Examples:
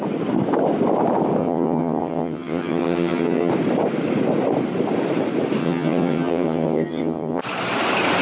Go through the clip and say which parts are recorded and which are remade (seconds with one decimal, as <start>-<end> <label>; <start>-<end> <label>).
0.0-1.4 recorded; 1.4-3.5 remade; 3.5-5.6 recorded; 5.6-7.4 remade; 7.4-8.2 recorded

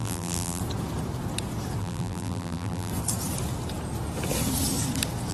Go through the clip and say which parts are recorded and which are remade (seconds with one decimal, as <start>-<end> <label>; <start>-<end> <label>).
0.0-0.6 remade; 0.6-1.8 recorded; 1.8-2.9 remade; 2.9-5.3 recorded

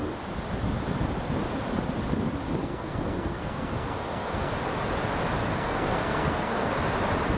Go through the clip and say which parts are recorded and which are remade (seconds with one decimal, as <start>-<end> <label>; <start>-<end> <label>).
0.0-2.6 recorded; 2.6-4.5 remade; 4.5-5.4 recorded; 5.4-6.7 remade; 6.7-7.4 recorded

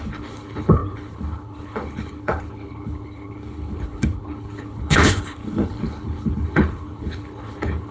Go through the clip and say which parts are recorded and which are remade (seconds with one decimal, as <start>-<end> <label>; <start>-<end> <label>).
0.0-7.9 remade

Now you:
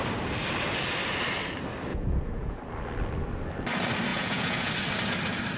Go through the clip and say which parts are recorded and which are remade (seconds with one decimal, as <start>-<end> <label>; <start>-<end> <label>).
0.0-1.9 recorded; 1.9-2.6 remade; 2.6-4.1 recorded; 4.1-4.7 remade; 4.7-5.6 recorded